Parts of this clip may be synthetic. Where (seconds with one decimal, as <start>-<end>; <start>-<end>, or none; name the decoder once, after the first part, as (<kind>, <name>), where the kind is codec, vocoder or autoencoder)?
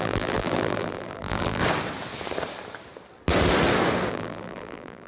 0.0-1.6 (vocoder, BigVGAN v2); 4.1-5.1